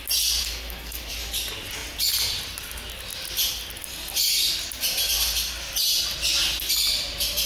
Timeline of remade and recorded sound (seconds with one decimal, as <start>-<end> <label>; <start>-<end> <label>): 0.0-0.4 recorded; 0.4-1.1 remade; 1.1-7.5 recorded